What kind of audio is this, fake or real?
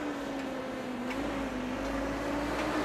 real